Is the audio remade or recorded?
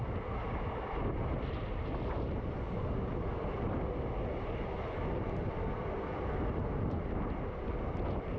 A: recorded